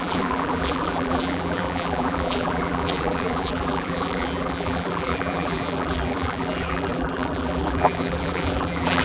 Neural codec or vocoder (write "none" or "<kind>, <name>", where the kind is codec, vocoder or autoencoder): vocoder, BigVGAN v2